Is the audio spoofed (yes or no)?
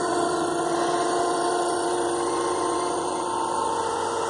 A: yes